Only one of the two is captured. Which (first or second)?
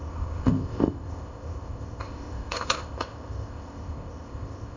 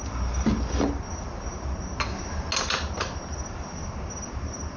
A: second